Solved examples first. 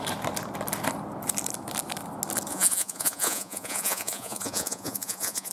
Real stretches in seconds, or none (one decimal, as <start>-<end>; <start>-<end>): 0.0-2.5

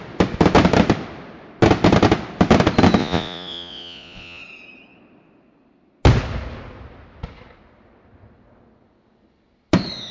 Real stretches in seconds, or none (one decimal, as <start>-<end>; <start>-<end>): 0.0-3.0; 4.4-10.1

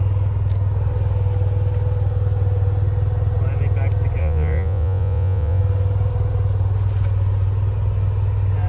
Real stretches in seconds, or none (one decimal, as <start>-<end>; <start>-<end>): 0.0-4.2; 5.6-8.7